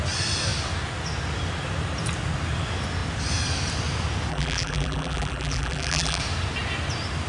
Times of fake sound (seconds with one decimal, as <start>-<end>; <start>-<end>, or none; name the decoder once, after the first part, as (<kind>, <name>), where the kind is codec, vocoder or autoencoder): 4.3-6.2 (vocoder, BigVGAN v2)